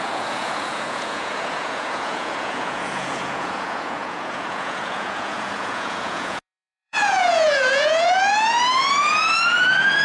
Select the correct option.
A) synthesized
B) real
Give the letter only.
A